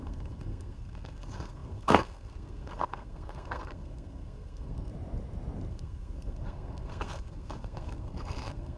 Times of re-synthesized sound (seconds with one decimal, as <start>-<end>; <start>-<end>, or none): 0.0-4.9; 5.7-8.8